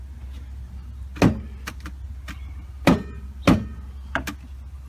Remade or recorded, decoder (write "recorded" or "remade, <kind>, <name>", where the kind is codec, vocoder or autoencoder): recorded